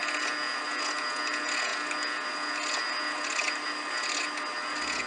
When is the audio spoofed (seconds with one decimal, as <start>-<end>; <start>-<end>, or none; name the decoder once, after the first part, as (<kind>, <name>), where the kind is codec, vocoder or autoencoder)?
none